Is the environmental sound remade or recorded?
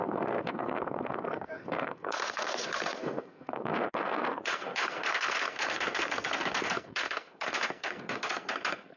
remade